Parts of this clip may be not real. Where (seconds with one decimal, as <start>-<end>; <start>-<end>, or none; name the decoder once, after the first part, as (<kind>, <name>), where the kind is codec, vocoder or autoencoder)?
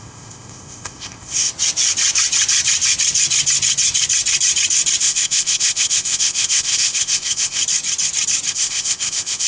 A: 0.0-1.5 (codec, ZipCodec); 5.0-7.6; 8.5-9.5